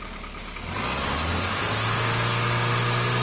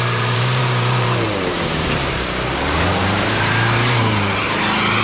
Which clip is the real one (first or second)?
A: first